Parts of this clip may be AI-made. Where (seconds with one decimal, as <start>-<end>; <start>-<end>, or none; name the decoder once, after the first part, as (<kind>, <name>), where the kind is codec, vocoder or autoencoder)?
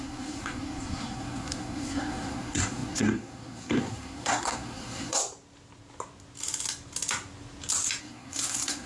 0.0-5.2 (codec, SNAC); 8.0-8.9